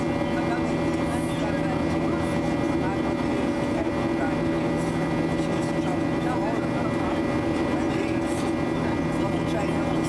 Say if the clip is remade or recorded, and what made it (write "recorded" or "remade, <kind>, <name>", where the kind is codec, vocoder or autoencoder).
recorded